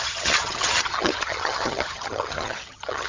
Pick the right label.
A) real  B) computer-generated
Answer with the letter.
B